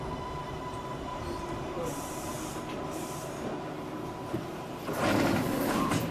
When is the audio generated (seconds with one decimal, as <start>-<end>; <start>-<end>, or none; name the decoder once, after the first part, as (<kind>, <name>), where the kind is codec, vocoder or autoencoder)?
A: 1.1-4.8 (vocoder, BigVGAN v2)